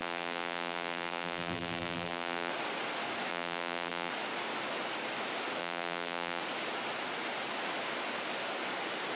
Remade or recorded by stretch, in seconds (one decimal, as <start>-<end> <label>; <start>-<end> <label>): 0.0-2.5 remade; 2.5-3.3 recorded; 3.3-4.1 remade; 4.1-5.6 recorded; 5.6-6.4 remade; 6.4-9.2 recorded